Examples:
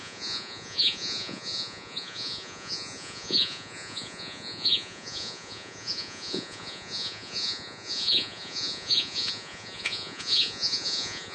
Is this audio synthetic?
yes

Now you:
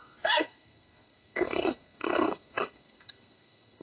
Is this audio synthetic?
yes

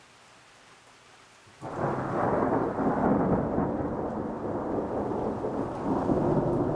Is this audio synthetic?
no